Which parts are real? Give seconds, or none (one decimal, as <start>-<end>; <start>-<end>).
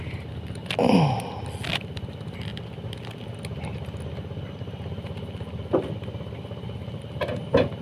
0.0-7.8